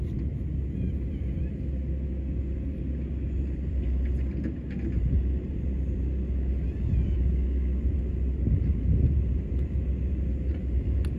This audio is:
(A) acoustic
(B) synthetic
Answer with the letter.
A